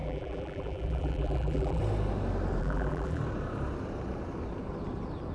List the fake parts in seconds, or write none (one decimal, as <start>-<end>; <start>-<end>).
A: 0.0-1.8; 2.6-3.2